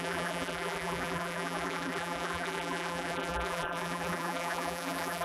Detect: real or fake fake